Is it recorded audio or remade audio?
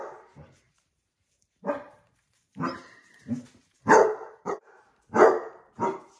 remade